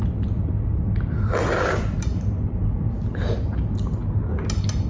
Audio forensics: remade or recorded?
recorded